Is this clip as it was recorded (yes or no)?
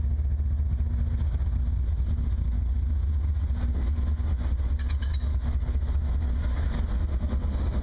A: yes